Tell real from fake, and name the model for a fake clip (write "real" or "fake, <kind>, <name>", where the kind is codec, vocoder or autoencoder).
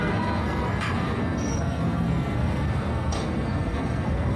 fake, codec, SNAC